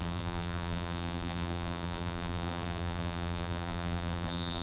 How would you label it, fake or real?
fake